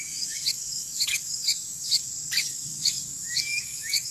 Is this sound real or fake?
fake